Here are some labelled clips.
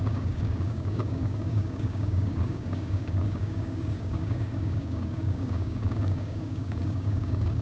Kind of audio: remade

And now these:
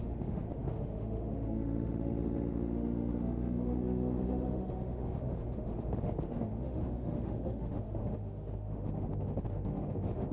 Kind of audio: remade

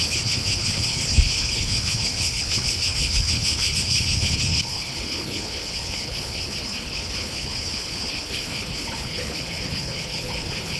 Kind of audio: remade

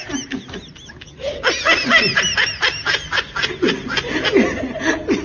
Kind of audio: recorded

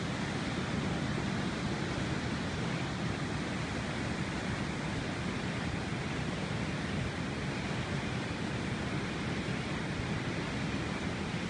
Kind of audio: recorded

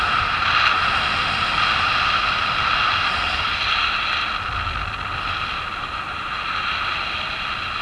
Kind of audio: recorded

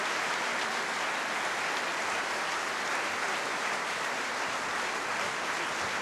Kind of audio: recorded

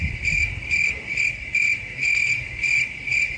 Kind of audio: recorded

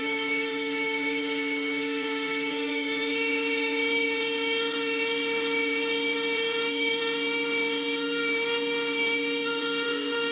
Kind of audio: remade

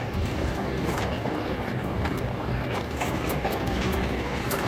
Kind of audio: remade